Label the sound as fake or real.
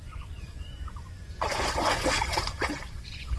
fake